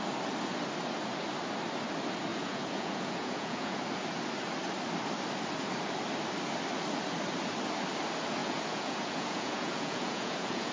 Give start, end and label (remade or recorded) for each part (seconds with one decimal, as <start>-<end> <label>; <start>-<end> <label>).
0.0-2.3 recorded; 2.3-3.8 remade; 3.8-8.4 recorded; 8.4-10.7 remade

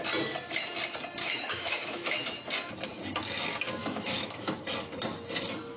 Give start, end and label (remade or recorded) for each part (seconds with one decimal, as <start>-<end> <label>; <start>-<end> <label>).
0.0-1.2 recorded; 1.2-2.4 remade; 2.4-3.8 recorded; 3.8-4.5 remade; 4.5-5.8 recorded

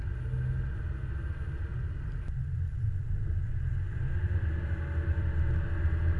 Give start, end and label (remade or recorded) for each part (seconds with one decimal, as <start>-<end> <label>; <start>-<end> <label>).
0.0-6.2 recorded